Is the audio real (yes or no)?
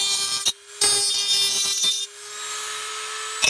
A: yes